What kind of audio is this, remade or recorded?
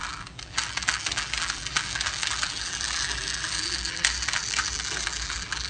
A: remade